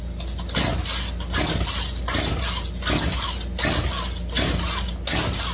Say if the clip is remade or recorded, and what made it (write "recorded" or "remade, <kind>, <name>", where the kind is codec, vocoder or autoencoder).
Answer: recorded